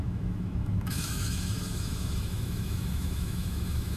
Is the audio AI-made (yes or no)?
yes